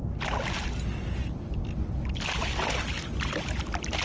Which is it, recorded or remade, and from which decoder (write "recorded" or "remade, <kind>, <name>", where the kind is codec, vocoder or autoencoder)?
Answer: recorded